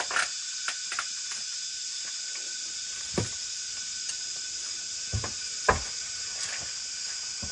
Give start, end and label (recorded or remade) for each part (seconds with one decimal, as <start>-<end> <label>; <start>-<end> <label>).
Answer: 0.0-5.1 recorded; 5.1-6.2 remade; 6.2-7.5 recorded